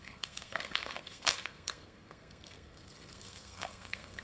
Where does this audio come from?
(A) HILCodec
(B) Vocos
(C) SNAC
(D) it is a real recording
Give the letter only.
C